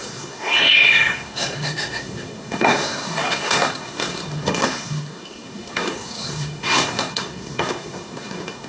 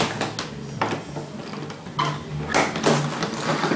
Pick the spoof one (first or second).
first